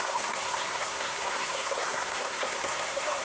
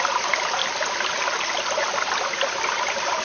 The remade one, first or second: first